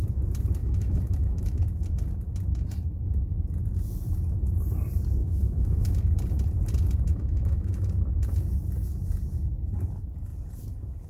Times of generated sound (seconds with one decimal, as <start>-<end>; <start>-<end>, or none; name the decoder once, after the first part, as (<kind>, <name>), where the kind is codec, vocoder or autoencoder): 0.6-1.6 (autoencoder, DAC-VAE); 5.2-5.9; 7.1-7.9